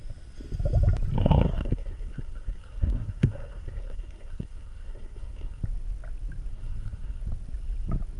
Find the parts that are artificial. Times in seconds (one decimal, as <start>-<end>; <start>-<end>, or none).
1.2-5.6; 6.5-7.2